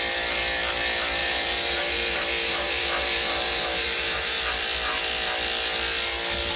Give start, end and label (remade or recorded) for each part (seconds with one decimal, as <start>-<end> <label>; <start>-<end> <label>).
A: 0.0-1.2 recorded; 1.2-4.4 remade; 4.4-6.6 recorded